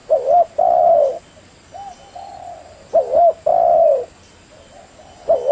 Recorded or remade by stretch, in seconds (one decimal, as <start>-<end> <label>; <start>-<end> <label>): 0.0-5.5 recorded

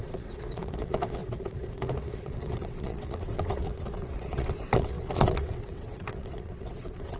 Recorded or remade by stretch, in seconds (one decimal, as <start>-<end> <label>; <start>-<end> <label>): 0.0-7.2 remade